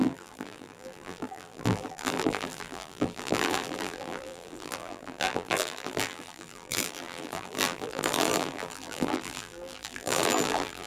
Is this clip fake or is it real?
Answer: fake